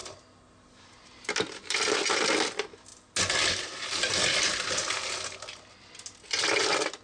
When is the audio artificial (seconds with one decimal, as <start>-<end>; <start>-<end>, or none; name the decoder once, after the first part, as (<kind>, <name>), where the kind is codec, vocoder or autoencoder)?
none